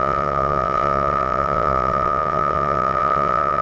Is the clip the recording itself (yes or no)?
no